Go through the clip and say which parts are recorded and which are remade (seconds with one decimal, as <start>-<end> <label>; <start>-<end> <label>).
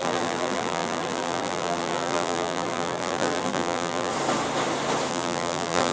0.0-4.1 remade; 4.1-5.1 recorded; 5.1-5.9 remade